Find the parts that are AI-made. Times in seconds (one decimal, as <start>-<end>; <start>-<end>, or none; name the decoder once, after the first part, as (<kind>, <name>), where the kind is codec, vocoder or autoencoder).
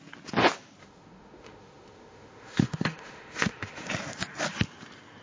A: 0.8-3.9 (autoencoder, DAC-VAE)